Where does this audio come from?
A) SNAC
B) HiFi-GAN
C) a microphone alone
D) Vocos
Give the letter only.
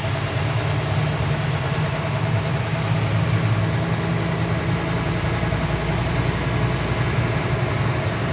C